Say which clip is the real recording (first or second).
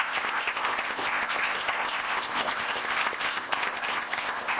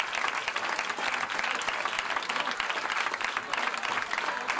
second